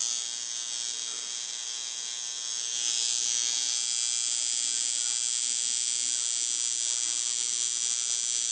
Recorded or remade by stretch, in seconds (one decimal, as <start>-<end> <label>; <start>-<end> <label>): 0.0-8.5 recorded